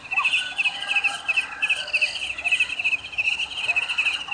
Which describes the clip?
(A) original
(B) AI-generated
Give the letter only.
A